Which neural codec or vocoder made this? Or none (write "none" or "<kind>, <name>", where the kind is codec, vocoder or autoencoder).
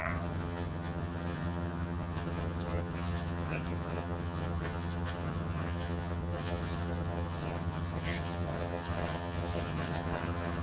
vocoder, HiFi-GAN